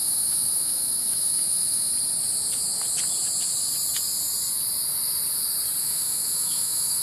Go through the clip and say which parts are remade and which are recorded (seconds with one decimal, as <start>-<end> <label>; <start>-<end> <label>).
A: 0.0-1.9 remade; 1.9-5.8 recorded; 5.8-7.0 remade